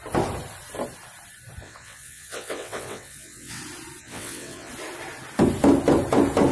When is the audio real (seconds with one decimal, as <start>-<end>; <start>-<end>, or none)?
0.0-1.6; 3.6-4.0; 4.7-6.5

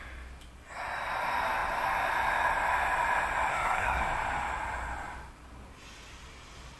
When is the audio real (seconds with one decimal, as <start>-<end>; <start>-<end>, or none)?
0.0-3.5; 4.0-6.8

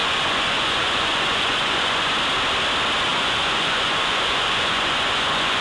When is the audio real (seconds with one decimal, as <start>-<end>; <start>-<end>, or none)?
2.1-3.1

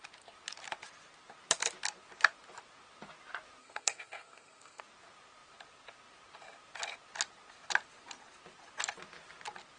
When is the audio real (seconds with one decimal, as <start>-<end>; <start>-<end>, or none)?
0.0-3.6; 4.8-9.8

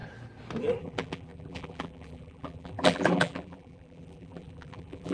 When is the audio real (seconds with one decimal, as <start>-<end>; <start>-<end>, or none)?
0.0-0.8

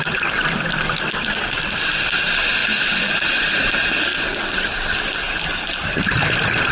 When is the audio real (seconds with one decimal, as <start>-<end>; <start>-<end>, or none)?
4.1-6.0

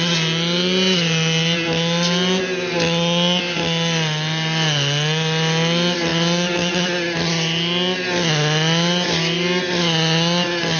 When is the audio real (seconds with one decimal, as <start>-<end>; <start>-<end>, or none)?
0.0-10.8

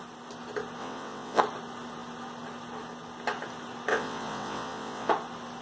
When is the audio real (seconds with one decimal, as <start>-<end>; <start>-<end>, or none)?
0.0-0.8; 1.4-3.9; 5.1-5.6